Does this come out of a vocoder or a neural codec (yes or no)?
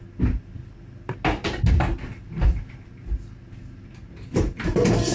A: no